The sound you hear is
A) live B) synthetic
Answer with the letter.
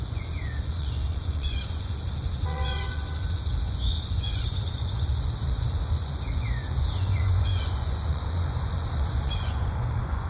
B